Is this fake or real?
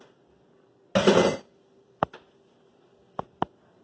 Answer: real